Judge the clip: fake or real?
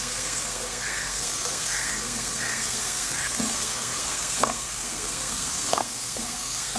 fake